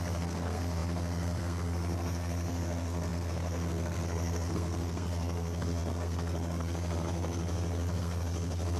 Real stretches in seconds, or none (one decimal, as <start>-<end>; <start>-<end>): none